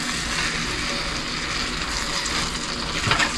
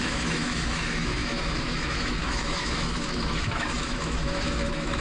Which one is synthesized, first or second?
second